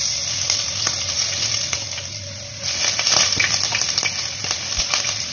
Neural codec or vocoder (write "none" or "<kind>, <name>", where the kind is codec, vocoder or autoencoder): none